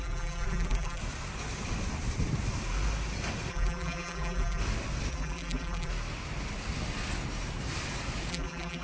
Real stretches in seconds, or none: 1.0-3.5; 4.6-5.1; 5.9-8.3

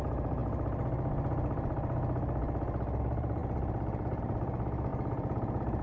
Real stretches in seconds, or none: 0.4-3.0

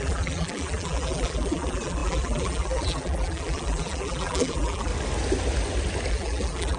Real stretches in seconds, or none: 4.9-6.1